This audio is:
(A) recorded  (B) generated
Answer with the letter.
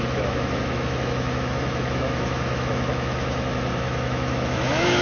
B